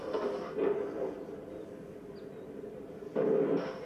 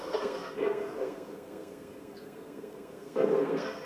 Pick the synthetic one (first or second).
second